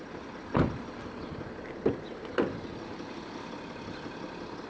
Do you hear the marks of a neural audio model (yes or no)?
no